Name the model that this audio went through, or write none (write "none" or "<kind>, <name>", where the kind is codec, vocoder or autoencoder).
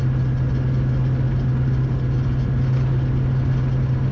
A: none